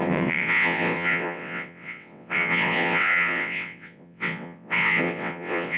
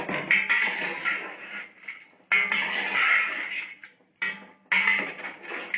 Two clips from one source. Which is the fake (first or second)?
first